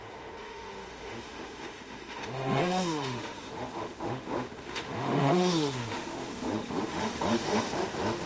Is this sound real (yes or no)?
no